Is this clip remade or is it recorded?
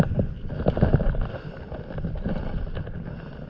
recorded